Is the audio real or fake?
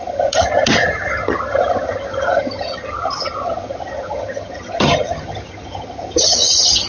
fake